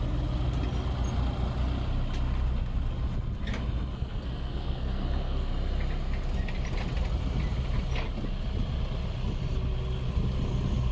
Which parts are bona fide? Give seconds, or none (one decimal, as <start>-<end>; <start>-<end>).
0.0-3.9; 5.5-10.9